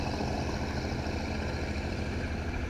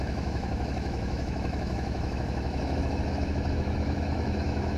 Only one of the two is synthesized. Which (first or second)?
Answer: second